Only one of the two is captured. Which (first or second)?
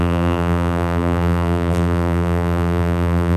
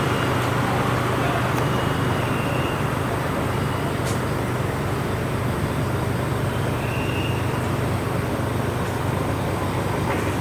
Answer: second